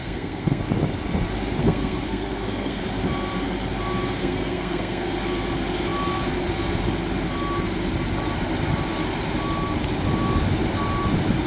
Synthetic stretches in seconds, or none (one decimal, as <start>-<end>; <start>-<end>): 0.0-0.6; 1.6-2.8; 4.2-5.1